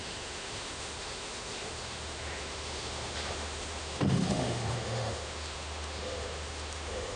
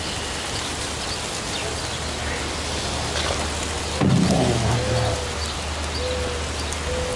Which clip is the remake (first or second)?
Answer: first